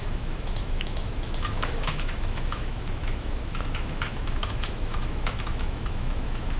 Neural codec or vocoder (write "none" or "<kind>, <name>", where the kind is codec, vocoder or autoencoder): autoencoder, DAC-VAE